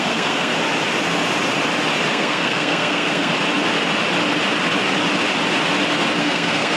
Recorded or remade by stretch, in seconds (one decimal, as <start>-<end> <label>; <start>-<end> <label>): 0.0-0.5 remade; 0.5-2.1 recorded; 2.1-3.3 remade; 3.3-6.2 recorded; 6.2-6.8 remade